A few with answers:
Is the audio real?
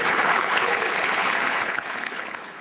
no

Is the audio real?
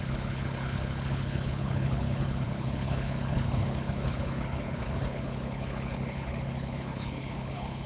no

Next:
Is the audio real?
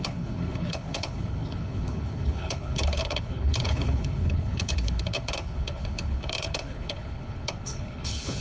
no